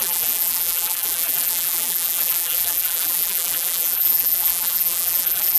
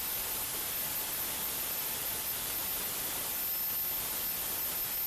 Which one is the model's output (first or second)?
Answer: first